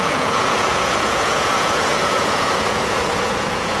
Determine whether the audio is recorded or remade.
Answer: remade